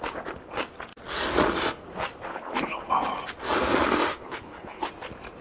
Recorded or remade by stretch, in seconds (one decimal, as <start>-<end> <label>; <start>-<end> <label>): 0.0-2.3 recorded; 2.3-2.9 remade; 2.9-4.1 recorded; 4.1-4.9 remade; 4.9-5.4 recorded